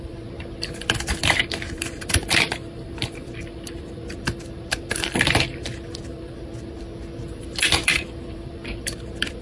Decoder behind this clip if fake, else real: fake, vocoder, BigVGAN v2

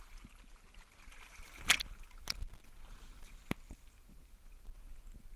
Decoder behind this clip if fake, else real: real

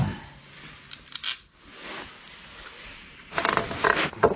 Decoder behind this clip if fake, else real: real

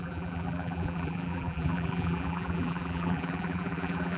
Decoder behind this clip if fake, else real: fake, vocoder, BigVGAN v2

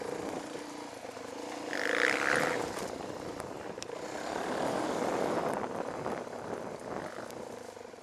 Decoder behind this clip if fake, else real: fake, vocoder, BigVGAN v2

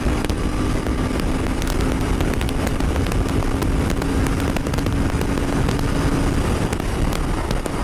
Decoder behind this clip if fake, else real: real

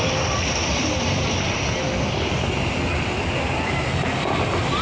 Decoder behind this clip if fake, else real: real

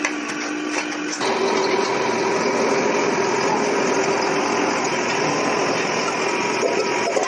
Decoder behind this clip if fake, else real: real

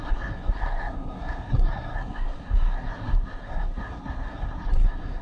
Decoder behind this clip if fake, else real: fake, codec, SNAC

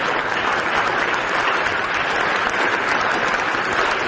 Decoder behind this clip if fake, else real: real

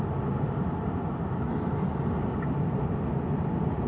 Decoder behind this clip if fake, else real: real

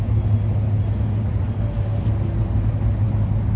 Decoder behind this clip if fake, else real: real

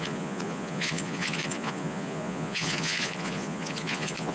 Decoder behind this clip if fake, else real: fake, vocoder, Vocos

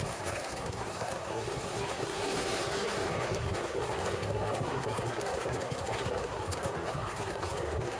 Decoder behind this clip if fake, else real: fake, codec, SNAC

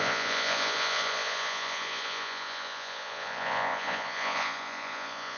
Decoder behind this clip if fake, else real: fake, vocoder, Vocos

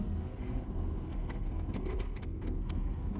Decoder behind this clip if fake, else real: fake, codec, SNAC